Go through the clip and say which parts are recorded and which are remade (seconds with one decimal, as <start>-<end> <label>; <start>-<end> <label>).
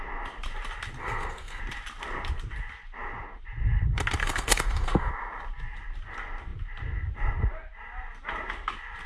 0.0-1.0 recorded; 1.0-1.6 remade; 1.6-4.2 recorded; 4.2-5.1 remade; 5.1-9.1 recorded